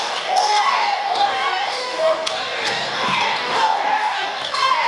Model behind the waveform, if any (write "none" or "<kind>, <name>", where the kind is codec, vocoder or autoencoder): codec, DAC